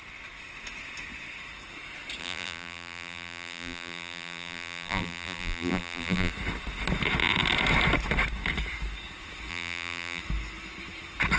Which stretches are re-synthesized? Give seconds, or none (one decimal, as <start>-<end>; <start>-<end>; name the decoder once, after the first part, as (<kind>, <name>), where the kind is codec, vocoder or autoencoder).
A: 2.2-6.3 (vocoder, BigVGAN v2); 9.5-10.2